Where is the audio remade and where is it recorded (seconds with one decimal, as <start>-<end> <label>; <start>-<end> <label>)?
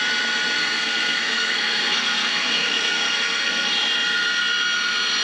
0.0-0.6 recorded; 0.6-3.7 remade; 3.7-5.2 recorded